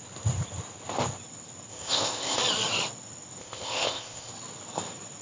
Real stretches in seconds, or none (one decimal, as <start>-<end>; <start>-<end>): 0.0-1.7; 2.4-3.4; 4.3-5.2